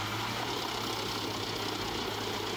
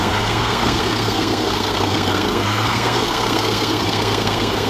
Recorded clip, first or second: first